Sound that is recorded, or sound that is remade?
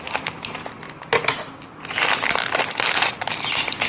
recorded